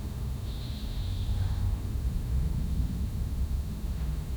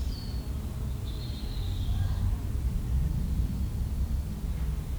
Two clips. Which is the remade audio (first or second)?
first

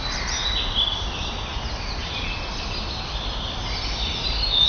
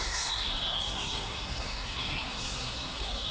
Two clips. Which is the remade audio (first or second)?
second